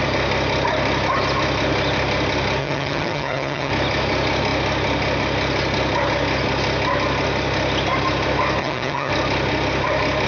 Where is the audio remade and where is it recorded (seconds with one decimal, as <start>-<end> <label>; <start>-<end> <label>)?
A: 0.0-2.6 recorded; 2.6-3.7 remade; 3.7-8.6 recorded; 8.6-9.1 remade; 9.1-10.3 recorded